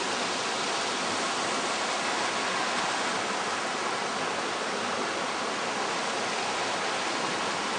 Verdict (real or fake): real